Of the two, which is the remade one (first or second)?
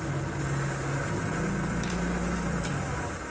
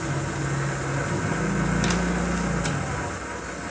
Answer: first